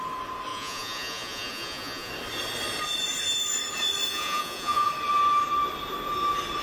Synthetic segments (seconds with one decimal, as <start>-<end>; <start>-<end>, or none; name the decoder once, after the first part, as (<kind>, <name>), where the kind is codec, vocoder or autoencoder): 0.5-2.1 (vocoder, Vocos); 4.1-4.9

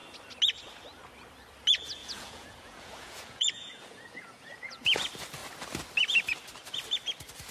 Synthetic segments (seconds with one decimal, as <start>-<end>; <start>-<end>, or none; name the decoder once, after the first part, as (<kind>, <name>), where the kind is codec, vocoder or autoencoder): 2.0-5.0 (vocoder, Vocos)